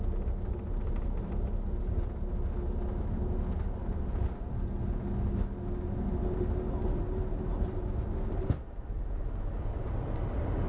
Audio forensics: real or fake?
real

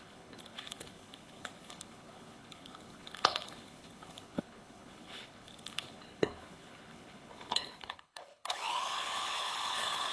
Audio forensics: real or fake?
fake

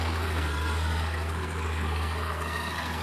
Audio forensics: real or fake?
fake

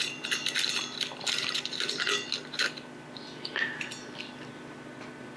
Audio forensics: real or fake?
real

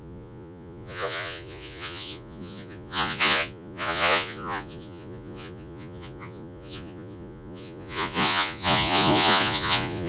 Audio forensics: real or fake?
fake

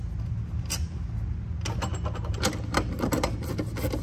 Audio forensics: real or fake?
real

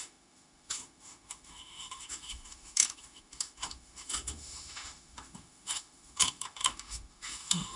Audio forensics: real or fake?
fake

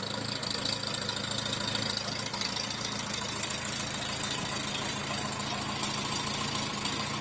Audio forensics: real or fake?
real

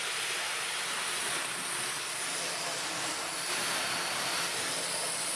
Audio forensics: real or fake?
real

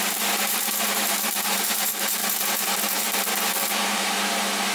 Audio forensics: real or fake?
fake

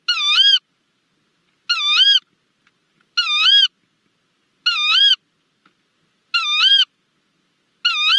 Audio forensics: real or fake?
real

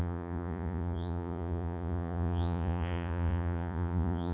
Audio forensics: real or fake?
fake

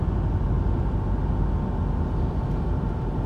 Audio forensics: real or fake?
real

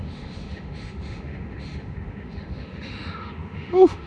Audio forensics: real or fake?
fake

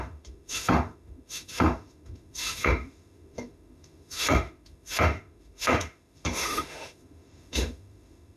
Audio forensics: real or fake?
fake